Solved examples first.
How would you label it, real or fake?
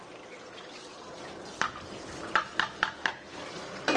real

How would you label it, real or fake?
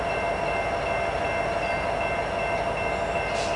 real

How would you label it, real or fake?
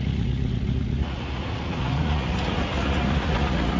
fake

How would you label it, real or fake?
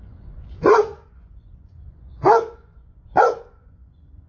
fake